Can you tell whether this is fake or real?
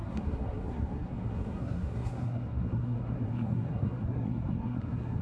fake